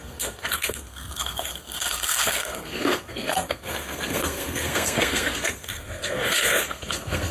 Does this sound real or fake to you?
fake